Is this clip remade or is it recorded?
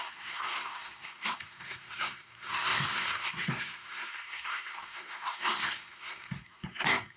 remade